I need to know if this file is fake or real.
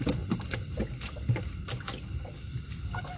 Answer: real